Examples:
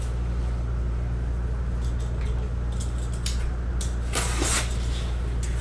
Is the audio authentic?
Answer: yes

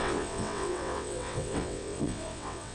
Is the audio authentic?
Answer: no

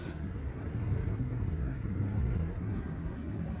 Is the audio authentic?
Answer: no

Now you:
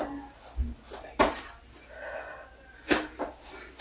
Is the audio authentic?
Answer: yes